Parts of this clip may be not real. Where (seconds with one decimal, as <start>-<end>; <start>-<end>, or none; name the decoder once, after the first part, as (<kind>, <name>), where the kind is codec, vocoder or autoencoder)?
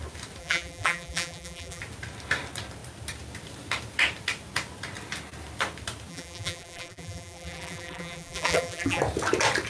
0.4-1.8 (vocoder, BigVGAN v2); 6.1-9.0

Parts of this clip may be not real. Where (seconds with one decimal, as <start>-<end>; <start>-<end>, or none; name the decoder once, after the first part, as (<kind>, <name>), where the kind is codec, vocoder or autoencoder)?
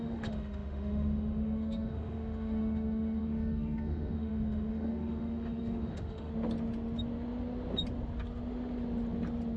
0.0-6.3 (autoencoder, DAC-VAE)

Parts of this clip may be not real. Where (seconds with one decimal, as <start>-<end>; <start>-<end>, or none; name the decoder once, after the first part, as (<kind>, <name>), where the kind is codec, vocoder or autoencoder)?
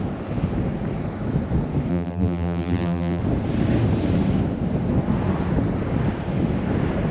1.9-3.2 (vocoder, BigVGAN v2)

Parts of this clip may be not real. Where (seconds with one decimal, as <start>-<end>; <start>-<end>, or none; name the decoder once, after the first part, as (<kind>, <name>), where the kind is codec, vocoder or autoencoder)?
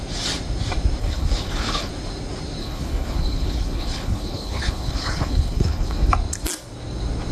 1.0-1.9 (codec, HILCodec); 2.6-6.1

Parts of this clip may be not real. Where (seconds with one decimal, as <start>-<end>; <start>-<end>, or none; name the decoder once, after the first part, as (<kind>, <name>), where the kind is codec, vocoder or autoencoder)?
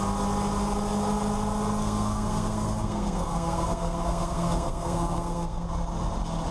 1.8-5.7 (codec, SNAC)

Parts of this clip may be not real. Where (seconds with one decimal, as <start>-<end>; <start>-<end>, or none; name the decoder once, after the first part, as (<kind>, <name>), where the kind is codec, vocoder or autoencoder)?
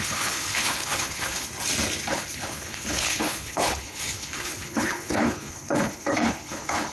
0.0-1.5 (codec, HILCodec); 2.1-6.9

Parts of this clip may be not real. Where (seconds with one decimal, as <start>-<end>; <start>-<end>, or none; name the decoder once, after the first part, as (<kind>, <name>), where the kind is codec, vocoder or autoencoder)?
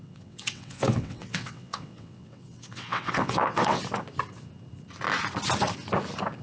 0.0-3.8 (vocoder, WaveNeXt)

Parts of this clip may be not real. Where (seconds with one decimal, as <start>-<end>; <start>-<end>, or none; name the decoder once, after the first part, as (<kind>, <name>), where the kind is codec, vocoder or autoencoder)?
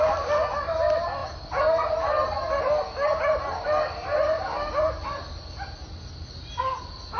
none